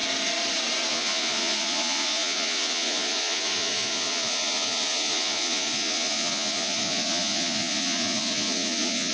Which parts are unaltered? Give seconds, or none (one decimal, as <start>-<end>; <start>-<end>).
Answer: 0.0-0.9